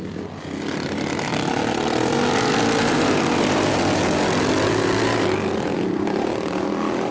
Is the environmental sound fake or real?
real